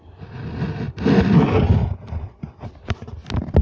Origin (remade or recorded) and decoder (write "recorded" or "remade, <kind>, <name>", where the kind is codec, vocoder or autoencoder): recorded